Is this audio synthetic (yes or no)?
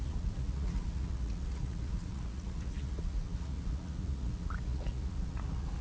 yes